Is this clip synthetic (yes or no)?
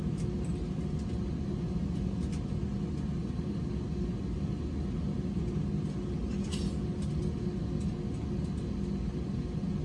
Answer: no